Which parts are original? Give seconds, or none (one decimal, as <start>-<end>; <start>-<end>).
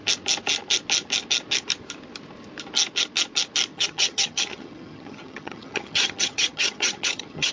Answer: 0.0-3.7